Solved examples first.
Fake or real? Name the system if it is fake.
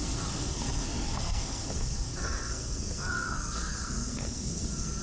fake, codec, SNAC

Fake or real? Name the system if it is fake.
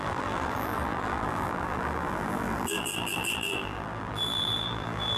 fake, vocoder, BigVGAN v2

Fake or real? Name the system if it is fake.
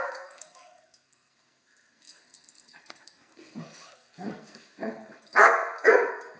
fake, codec, SNAC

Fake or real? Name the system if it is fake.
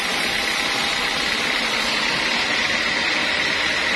real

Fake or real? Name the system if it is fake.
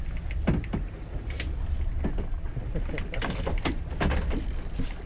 real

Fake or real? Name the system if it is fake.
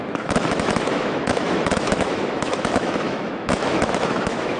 fake, autoencoder, DAC-VAE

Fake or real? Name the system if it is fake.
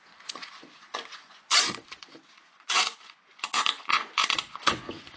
fake, vocoder, Vocos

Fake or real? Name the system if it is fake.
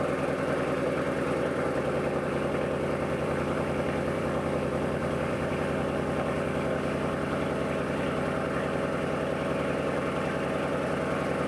fake, vocoder, BigVGAN v2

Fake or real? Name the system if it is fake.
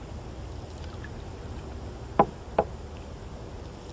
real